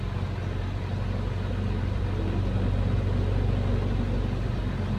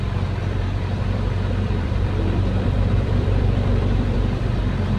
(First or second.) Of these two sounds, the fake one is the second